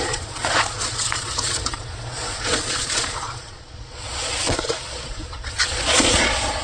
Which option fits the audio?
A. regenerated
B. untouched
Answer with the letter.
A